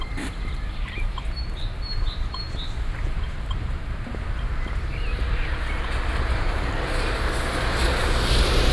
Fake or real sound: fake